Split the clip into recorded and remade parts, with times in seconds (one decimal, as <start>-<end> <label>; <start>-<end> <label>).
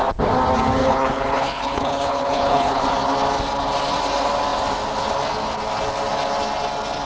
0.0-0.8 recorded; 0.8-2.8 remade; 2.8-7.1 recorded